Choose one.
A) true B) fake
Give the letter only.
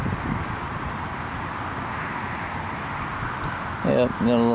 A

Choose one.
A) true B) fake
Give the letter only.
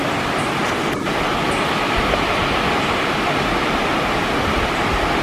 A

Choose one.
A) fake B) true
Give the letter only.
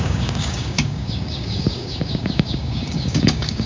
A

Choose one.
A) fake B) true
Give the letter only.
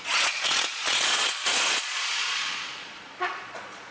A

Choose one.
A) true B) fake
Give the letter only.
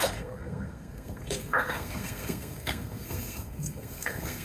B